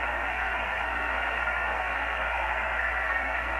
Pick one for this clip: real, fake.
fake